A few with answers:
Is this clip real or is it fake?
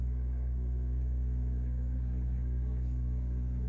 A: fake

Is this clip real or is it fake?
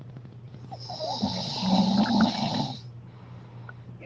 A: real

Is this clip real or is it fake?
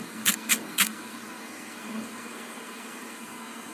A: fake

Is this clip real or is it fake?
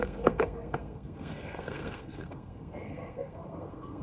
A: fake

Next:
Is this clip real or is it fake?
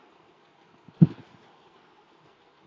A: fake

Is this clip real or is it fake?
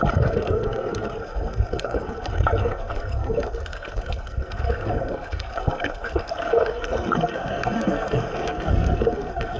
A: fake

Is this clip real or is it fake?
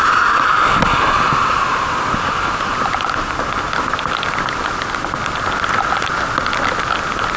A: real